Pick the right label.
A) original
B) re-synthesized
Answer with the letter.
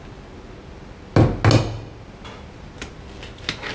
A